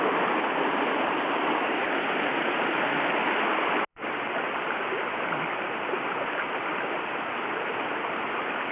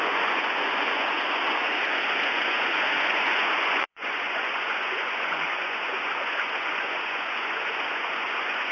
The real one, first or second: first